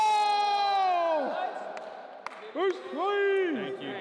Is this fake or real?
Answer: real